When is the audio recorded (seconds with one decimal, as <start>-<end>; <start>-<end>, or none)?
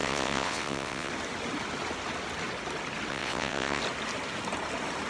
1.1-3.1; 3.8-5.1